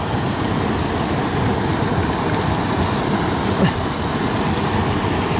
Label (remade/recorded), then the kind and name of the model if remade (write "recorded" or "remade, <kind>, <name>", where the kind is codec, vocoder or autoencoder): recorded